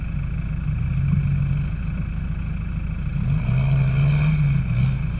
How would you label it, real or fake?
real